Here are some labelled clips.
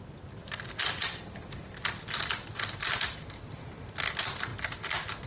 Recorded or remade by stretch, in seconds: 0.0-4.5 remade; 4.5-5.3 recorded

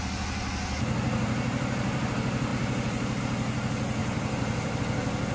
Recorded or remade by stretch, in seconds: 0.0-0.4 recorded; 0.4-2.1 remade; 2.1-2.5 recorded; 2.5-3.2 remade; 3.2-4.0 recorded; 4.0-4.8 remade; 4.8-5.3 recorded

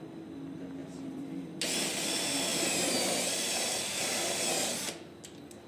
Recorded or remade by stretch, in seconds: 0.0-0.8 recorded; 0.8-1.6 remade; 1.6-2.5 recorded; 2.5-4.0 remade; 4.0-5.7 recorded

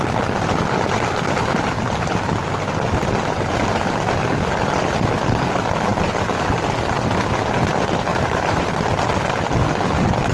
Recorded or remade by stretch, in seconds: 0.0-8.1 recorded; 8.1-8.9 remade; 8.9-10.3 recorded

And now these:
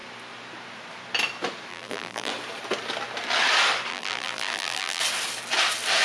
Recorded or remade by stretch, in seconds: 0.0-1.7 recorded; 1.7-2.3 remade; 2.3-3.9 recorded; 3.9-5.0 remade; 5.0-6.0 recorded

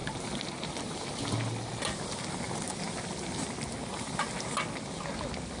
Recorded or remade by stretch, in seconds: 0.0-5.6 recorded

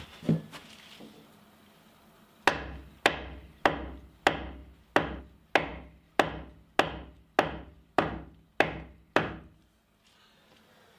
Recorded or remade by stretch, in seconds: 0.0-11.0 recorded